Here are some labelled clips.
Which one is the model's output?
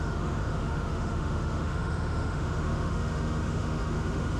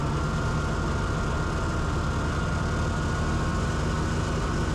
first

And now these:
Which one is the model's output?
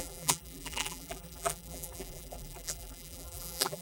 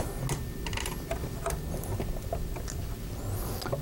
first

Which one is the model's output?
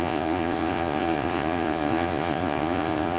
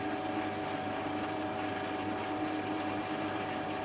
first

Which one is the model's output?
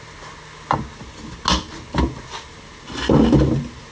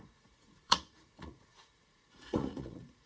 second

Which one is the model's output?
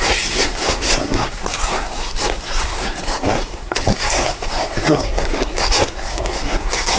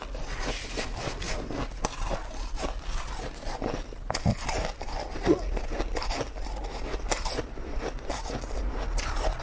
first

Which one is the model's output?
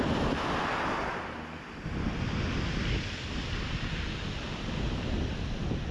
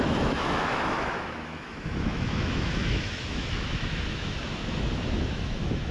second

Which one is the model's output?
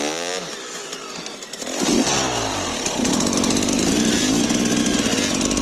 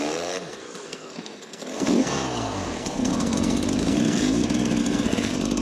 second